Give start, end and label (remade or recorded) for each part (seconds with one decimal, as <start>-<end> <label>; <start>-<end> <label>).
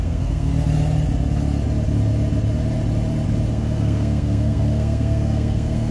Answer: 0.0-0.5 remade; 0.5-3.5 recorded; 3.5-5.9 remade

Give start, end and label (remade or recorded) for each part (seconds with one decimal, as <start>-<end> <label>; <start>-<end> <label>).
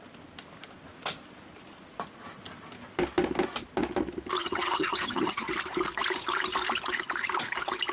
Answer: 0.0-4.4 recorded; 4.4-5.4 remade; 5.4-7.9 recorded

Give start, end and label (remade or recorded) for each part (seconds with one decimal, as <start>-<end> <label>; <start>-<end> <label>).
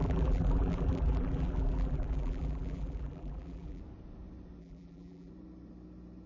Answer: 0.0-3.8 remade; 3.8-4.6 recorded; 4.6-5.3 remade; 5.3-6.3 recorded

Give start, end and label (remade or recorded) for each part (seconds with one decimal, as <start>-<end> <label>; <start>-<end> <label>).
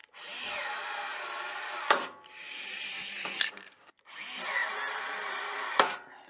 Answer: 0.0-6.3 remade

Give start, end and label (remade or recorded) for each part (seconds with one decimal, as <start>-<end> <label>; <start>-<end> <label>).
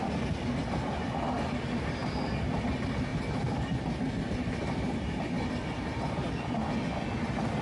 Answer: 0.0-7.6 recorded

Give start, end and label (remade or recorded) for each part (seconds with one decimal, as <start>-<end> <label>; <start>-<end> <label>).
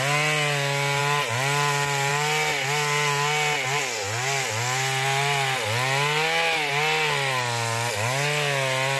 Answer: 0.0-9.0 recorded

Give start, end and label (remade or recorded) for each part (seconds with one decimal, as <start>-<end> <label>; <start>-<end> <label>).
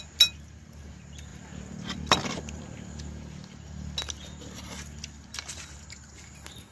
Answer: 0.0-1.3 recorded; 1.3-2.6 remade; 2.6-6.7 recorded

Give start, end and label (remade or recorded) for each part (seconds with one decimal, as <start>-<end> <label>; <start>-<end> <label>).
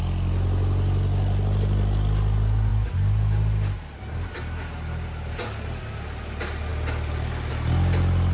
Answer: 0.0-8.3 recorded